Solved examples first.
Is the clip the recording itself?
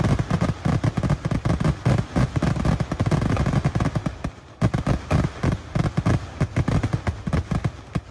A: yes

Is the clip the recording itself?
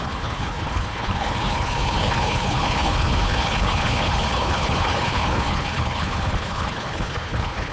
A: no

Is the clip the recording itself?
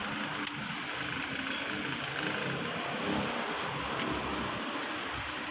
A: yes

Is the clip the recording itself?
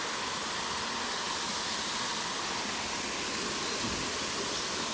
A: yes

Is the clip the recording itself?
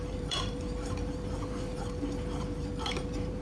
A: no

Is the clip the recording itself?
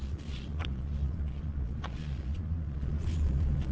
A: no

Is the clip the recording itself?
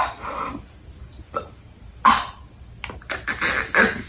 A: yes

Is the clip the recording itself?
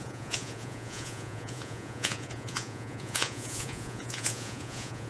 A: no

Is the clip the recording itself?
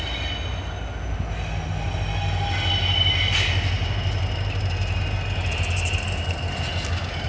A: yes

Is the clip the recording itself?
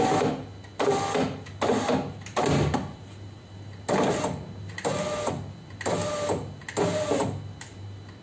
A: yes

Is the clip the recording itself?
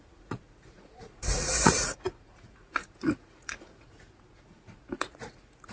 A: no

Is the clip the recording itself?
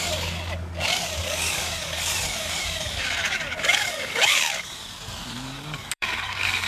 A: no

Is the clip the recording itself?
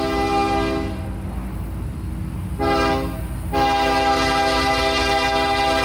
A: yes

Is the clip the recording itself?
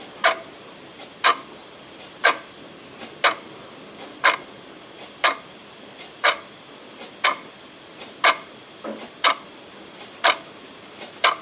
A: yes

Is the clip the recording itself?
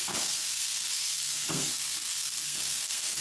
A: no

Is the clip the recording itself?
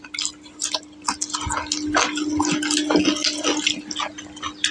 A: yes